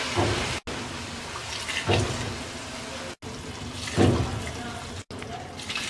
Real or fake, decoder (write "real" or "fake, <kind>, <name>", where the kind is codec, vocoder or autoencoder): real